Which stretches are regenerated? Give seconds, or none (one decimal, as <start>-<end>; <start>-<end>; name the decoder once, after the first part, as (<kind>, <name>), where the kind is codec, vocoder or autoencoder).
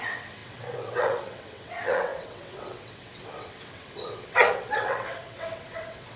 0.0-6.2 (vocoder, WaveNeXt)